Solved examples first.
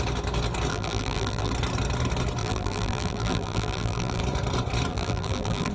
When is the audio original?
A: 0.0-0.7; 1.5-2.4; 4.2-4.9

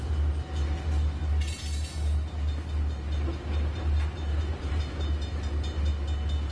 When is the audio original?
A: 0.0-4.3; 4.8-6.5

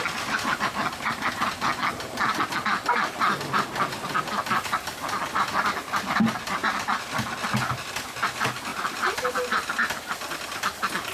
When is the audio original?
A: 0.0-8.7; 9.3-11.1

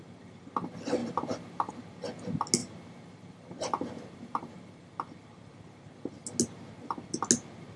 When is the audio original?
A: 0.0-1.0; 1.7-2.6; 4.8-7.8